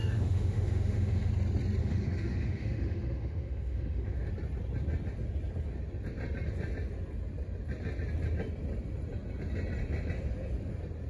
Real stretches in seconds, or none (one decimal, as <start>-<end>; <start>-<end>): 1.3-1.8; 4.3-11.1